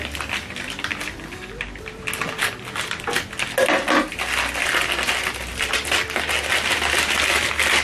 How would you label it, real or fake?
real